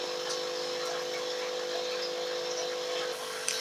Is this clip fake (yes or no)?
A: no